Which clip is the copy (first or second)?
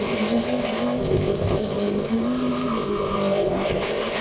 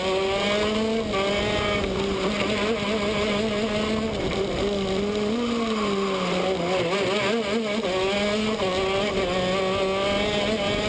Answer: first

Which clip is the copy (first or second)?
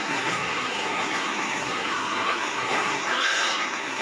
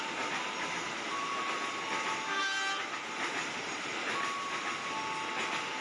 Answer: first